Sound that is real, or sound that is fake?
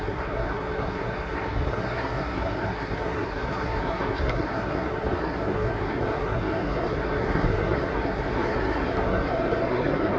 fake